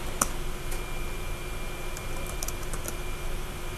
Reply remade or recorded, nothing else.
recorded